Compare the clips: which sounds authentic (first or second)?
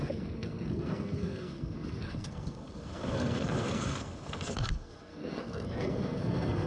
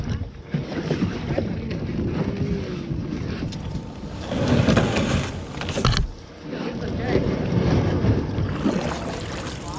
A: second